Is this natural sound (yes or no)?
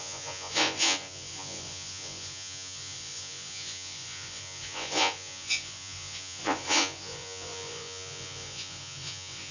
no